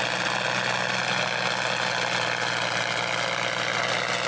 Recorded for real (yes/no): yes